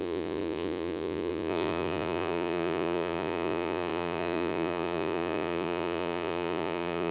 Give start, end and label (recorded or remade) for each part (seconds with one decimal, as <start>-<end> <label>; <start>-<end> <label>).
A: 0.0-7.1 remade